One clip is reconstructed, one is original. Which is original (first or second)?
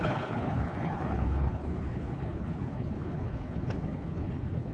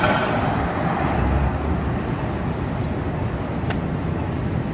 second